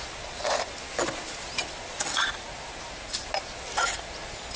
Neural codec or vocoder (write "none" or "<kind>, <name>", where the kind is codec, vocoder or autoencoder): none